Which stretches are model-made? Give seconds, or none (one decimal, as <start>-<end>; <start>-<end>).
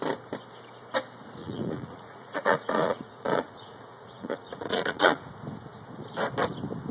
1.4-5.3